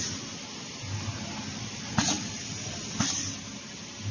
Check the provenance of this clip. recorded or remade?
recorded